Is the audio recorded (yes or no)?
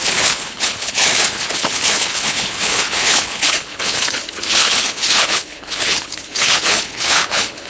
no